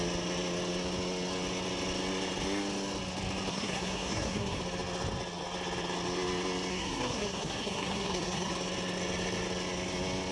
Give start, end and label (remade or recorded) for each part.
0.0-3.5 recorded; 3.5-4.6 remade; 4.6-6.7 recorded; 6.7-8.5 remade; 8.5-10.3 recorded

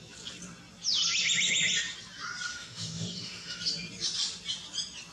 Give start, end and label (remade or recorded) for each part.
0.0-2.5 recorded; 2.5-3.6 remade; 3.6-5.1 recorded